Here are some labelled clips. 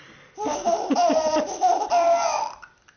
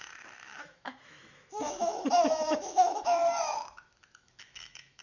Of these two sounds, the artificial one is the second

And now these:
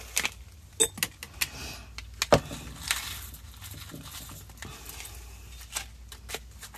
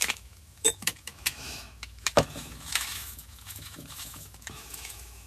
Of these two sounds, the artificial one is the second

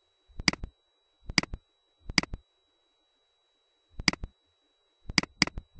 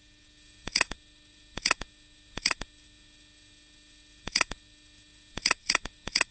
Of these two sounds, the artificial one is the second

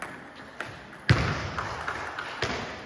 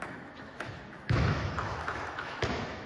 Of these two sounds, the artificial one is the second